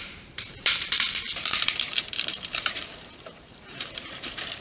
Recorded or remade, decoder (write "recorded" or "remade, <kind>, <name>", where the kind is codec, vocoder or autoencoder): remade, vocoder, BigVGAN v2